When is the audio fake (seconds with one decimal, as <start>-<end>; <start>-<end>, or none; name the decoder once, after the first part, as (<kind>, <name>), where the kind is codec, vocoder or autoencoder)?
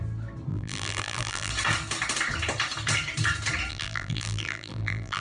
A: 0.5-1.5 (vocoder, BigVGAN v2); 3.7-5.2